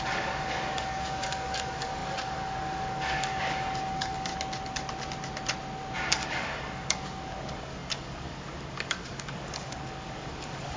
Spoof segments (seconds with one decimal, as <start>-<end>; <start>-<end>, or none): 0.0-4.3; 6.1-10.8